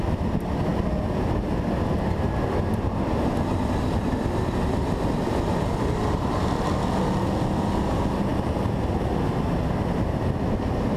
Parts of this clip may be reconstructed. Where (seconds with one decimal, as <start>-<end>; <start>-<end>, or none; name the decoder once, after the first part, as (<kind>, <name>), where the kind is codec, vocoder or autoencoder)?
none